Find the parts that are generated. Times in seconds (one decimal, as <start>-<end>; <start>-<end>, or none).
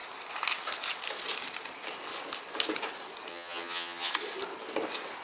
3.3-4.1